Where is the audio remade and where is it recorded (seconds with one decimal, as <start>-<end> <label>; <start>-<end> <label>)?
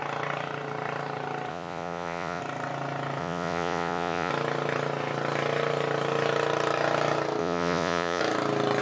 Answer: 0.0-1.5 recorded; 1.5-2.4 remade; 2.4-3.2 recorded; 3.2-4.3 remade; 4.3-7.4 recorded; 7.4-8.2 remade; 8.2-8.8 recorded